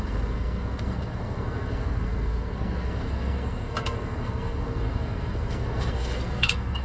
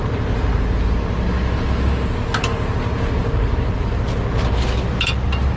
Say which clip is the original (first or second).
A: second